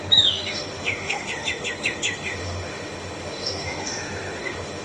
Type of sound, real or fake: fake